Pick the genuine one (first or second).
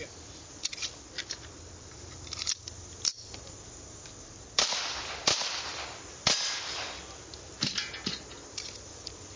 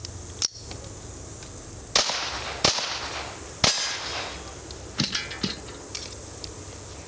second